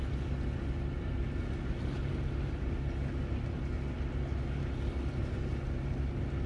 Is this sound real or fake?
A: real